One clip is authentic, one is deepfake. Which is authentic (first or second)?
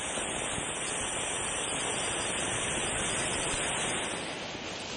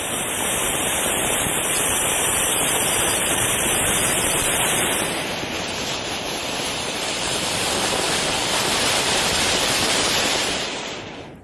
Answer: first